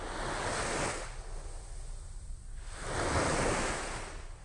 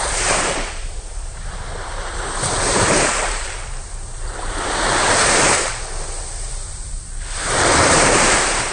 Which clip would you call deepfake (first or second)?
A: second